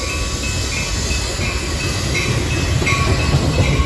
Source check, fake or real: real